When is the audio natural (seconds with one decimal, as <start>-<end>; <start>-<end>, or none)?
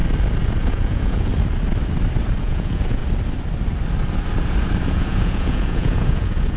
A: 0.0-0.6; 1.3-2.4; 3.0-4.9